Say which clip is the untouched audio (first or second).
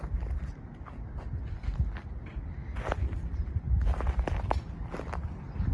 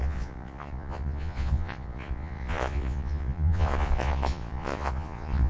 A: first